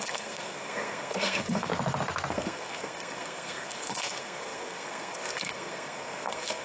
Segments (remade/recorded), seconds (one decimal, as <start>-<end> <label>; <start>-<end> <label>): 0.0-1.7 remade; 1.7-2.3 recorded; 2.3-6.6 remade